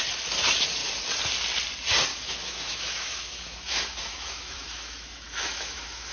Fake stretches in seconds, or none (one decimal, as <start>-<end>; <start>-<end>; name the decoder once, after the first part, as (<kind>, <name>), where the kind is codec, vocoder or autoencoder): 2.1-6.1 (autoencoder, DAC-VAE)